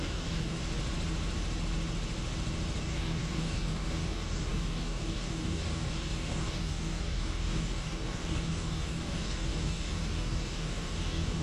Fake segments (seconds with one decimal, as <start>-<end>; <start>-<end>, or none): 0.0-0.6; 2.8-11.4